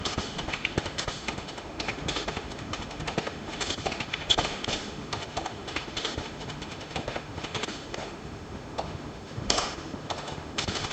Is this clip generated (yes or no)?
yes